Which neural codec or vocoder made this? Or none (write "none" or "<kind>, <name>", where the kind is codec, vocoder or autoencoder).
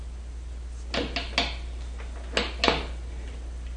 none